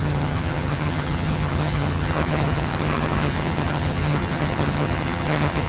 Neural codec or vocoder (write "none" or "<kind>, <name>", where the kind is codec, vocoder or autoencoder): vocoder, HiFi-GAN